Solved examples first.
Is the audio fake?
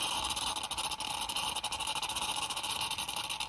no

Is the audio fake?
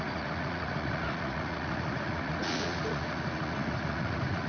yes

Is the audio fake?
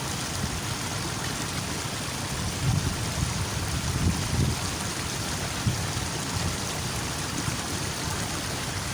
no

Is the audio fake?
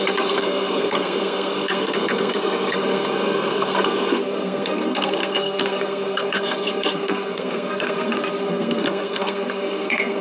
yes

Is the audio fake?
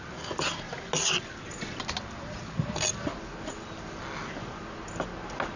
no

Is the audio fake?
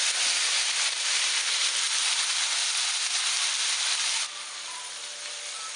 no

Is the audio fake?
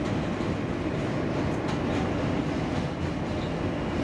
no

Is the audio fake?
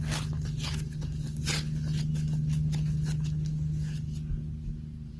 no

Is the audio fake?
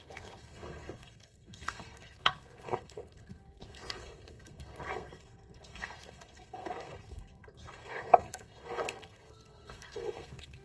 yes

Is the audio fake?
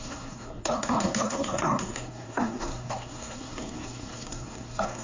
yes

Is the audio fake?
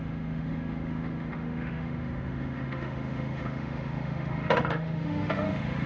yes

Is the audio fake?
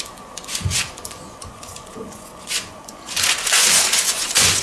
yes